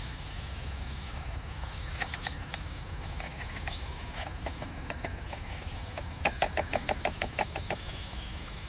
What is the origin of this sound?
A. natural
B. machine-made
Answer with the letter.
B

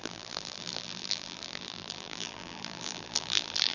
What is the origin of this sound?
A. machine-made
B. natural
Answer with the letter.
A